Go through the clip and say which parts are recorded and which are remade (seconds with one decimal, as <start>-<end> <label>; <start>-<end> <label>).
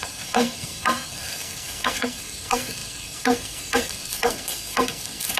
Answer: 0.0-5.4 remade